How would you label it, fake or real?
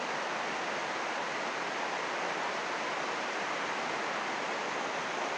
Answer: real